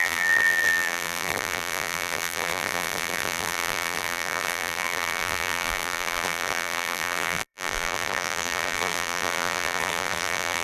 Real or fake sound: fake